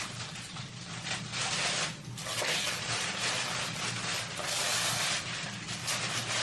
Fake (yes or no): no